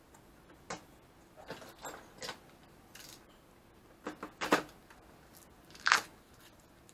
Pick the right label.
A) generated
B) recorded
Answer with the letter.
B